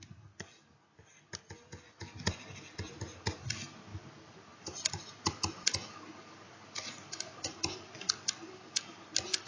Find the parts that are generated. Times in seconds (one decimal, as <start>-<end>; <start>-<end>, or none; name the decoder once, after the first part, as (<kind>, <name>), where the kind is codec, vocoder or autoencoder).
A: 3.9-7.5 (vocoder, BigVGAN v2)